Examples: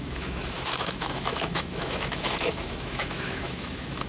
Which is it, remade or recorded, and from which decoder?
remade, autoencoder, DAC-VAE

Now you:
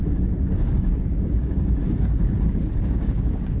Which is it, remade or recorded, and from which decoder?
remade, codec, DAC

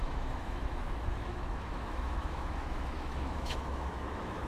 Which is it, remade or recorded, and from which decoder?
remade, autoencoder, DAC-VAE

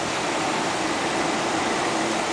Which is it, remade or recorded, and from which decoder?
recorded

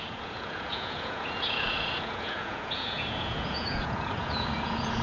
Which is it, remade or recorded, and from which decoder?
remade, vocoder, Vocos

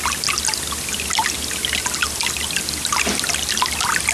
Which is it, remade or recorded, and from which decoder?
recorded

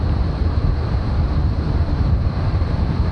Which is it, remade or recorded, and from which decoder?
remade, vocoder, BigVGAN v2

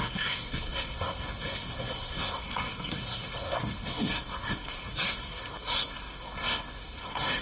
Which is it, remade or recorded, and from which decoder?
remade, codec, SNAC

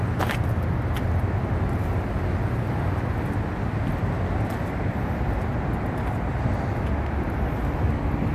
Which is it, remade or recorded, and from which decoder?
recorded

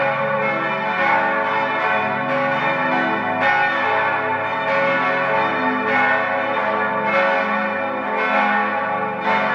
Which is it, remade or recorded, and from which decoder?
recorded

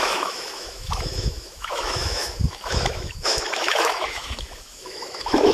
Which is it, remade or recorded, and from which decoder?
remade, autoencoder, DAC-VAE